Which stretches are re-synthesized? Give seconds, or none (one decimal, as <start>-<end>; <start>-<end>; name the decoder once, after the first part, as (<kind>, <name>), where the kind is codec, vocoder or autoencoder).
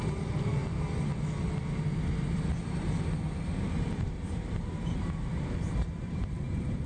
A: 0.0-0.6 (vocoder, BigVGAN v2); 4.0-6.9